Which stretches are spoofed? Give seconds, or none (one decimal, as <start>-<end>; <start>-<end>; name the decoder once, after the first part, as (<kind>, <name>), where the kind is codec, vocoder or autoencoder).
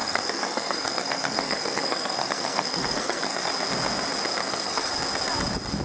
0.0-3.5 (codec, SNAC); 4.4-4.9